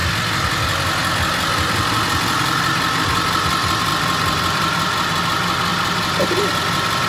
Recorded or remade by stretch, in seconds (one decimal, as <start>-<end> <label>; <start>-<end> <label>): 0.0-3.9 recorded; 3.9-5.2 remade; 5.2-5.7 recorded; 5.7-6.3 remade; 6.3-7.1 recorded